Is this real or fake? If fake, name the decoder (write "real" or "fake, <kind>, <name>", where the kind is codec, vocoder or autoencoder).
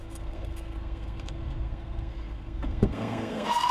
fake, codec, SNAC